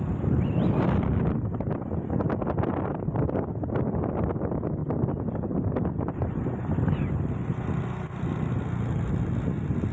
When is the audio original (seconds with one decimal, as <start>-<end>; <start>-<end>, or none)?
0.0-9.9